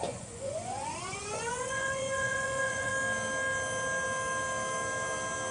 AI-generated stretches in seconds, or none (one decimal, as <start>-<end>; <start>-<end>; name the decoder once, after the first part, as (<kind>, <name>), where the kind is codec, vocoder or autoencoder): 0.0-2.9 (vocoder, Vocos)